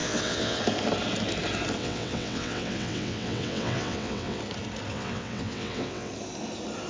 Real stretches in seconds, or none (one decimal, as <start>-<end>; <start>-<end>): 0.6-1.8; 4.4-4.9; 6.1-6.9